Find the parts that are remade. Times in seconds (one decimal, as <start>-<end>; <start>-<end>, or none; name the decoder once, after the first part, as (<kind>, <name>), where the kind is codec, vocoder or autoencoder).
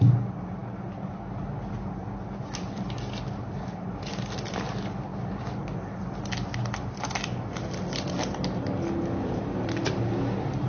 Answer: none